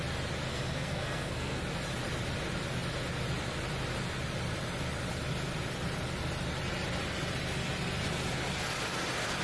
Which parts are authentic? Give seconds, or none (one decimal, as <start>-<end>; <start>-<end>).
0.0-0.5; 1.6-9.4